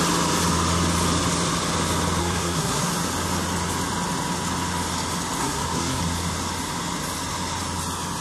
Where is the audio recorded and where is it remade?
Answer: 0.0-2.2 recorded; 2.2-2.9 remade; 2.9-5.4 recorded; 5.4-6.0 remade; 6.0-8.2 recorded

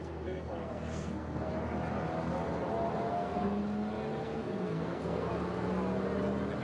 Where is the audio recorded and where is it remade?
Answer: 0.0-1.5 remade; 1.5-3.1 recorded; 3.1-3.6 remade; 3.6-4.2 recorded; 4.2-5.3 remade; 5.3-6.6 recorded

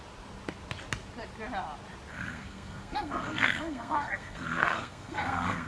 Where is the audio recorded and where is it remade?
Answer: 0.0-2.1 recorded; 2.1-5.7 remade

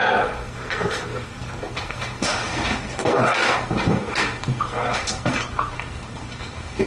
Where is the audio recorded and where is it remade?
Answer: 0.0-6.9 remade

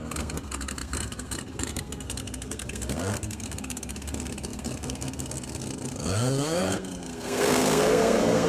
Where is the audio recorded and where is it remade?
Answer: 0.0-8.5 remade